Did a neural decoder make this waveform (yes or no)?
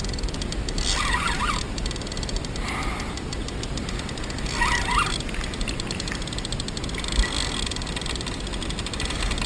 no